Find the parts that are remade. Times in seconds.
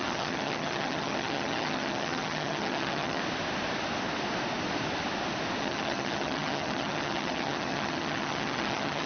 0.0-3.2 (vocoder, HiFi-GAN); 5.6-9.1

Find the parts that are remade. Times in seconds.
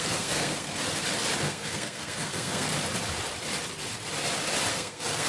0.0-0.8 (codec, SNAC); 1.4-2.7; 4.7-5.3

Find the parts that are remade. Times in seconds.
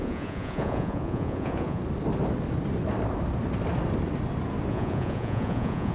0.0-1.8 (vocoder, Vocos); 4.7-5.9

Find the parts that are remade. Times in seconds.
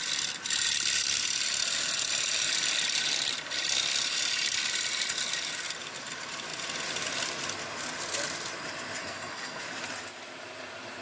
9.0-9.6 (codec, SNAC)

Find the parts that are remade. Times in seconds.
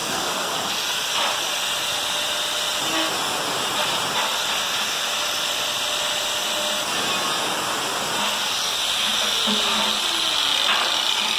0.0-0.7 (codec, SNAC)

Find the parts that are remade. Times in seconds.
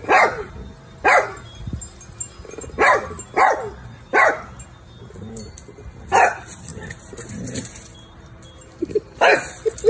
6.7-7.3 (vocoder, BigVGAN v2)